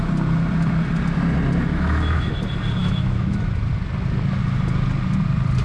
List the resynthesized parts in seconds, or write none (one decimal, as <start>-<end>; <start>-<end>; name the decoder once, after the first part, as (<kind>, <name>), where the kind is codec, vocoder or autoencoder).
1.7-2.3 (autoencoder, DAC-VAE); 2.8-3.5